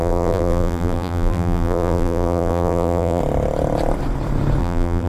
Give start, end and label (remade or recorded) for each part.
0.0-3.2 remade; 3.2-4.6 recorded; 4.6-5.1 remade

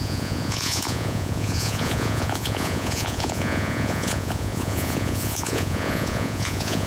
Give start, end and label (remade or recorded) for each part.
0.0-6.9 remade

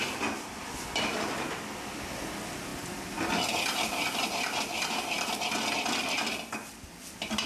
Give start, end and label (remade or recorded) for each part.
0.0-7.5 recorded

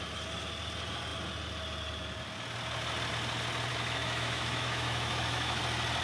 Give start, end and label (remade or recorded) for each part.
0.0-3.7 recorded; 3.7-5.6 remade; 5.6-6.0 recorded

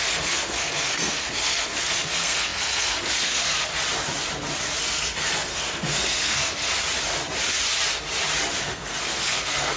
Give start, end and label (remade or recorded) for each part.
0.0-3.7 remade; 3.7-4.8 recorded; 4.8-6.7 remade; 6.7-8.6 recorded; 8.6-9.8 remade

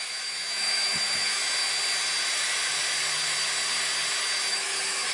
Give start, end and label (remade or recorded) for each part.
0.0-1.4 remade; 1.4-4.5 recorded; 4.5-5.1 remade

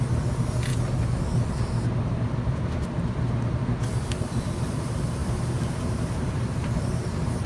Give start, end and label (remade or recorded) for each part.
0.0-0.7 remade; 0.7-4.6 recorded; 4.6-7.5 remade